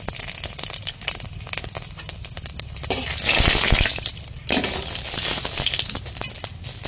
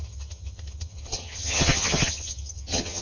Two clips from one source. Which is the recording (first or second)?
first